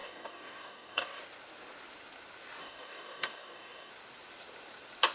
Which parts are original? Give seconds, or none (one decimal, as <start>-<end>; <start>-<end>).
1.2-2.6; 3.9-5.1